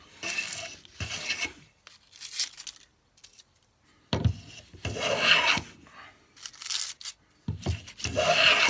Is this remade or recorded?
recorded